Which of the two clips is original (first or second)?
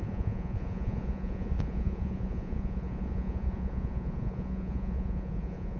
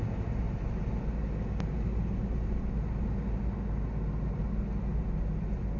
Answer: second